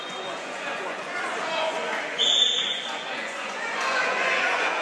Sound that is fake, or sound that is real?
fake